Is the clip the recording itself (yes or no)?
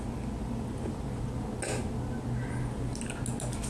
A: yes